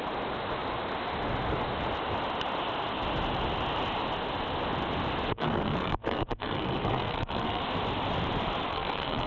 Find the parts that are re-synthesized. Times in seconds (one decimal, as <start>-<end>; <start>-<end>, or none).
5.3-7.6; 8.7-9.3